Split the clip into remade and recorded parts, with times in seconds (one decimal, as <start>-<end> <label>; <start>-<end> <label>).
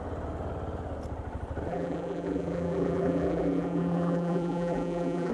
0.0-1.7 recorded; 1.7-5.3 remade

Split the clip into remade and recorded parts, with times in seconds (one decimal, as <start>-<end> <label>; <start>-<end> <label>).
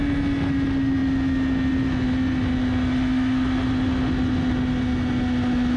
0.0-5.8 recorded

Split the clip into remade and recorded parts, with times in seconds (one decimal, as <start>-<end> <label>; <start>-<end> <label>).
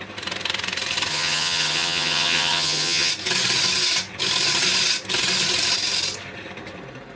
0.0-1.1 recorded; 1.1-3.1 remade; 3.1-7.2 recorded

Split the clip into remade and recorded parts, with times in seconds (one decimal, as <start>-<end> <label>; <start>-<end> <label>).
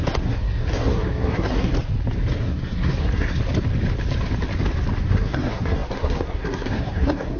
0.0-1.7 remade; 1.7-2.4 recorded; 2.4-3.4 remade; 3.4-5.1 recorded; 5.1-7.4 remade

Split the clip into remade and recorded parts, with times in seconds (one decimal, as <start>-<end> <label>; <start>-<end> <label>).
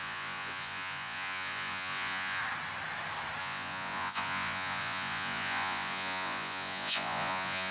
0.0-2.4 remade; 2.4-3.4 recorded; 3.4-7.7 remade